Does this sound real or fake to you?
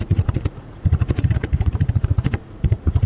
fake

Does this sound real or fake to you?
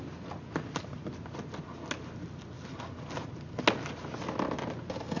real